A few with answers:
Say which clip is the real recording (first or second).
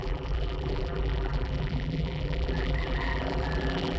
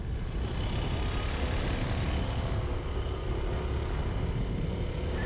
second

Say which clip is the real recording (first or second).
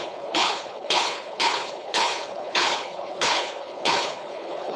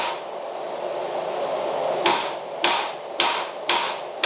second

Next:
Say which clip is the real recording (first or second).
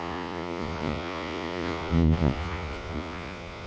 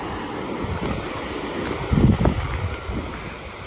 second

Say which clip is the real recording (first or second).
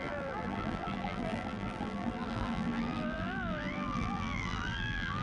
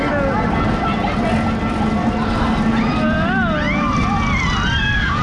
second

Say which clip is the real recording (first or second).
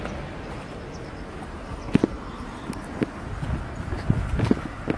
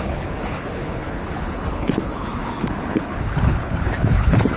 first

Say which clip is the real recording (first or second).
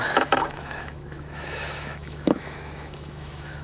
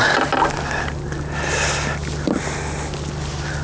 second